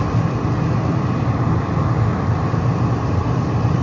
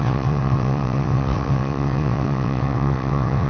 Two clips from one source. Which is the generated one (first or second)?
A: second